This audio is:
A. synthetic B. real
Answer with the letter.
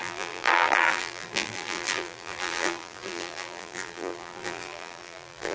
A